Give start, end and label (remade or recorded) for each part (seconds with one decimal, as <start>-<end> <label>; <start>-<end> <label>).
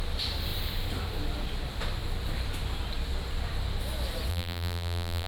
0.0-4.3 recorded; 4.3-5.3 remade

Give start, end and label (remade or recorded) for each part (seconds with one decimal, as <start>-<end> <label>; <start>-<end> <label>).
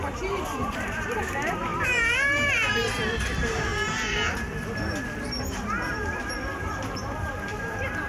0.0-3.7 remade; 3.7-6.6 recorded; 6.6-8.1 remade